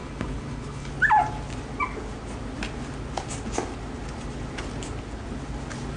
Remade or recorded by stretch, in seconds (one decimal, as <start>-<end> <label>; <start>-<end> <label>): 0.0-0.9 remade; 0.9-6.0 recorded

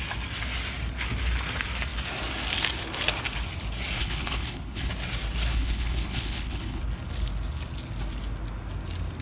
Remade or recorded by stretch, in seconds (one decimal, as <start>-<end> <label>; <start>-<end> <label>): 0.0-4.0 recorded; 4.0-4.9 remade; 4.9-5.5 recorded; 5.5-6.8 remade; 6.8-9.2 recorded

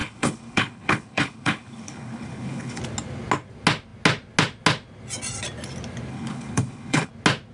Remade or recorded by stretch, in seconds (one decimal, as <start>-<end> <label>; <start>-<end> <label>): 0.0-2.8 remade; 2.8-6.1 recorded; 6.1-7.1 remade; 7.1-7.5 recorded

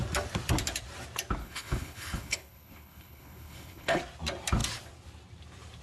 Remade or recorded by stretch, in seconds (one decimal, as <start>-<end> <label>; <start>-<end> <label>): 0.0-1.4 recorded; 1.4-4.0 remade; 4.0-5.8 recorded

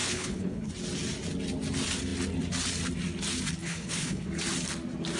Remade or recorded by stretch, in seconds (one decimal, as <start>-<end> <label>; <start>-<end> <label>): 0.0-0.7 remade; 0.7-3.6 recorded; 3.6-4.3 remade; 4.3-5.2 recorded